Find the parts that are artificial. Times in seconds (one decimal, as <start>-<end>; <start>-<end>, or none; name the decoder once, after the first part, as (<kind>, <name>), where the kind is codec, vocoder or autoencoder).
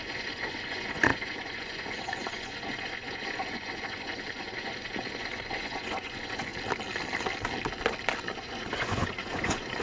0.0-6.5 (vocoder, Vocos); 8.2-9.8